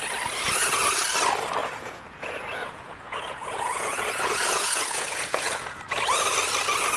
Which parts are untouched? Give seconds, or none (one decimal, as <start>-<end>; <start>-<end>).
0.0-1.6; 5.8-7.0